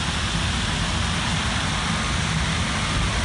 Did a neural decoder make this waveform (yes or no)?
no